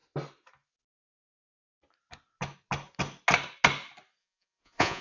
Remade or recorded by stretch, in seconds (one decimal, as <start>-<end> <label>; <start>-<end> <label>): 0.0-4.2 recorded; 4.2-5.0 remade